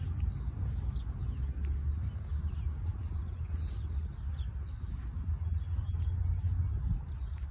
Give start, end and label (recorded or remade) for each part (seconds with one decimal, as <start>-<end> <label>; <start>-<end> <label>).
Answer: 0.0-7.5 recorded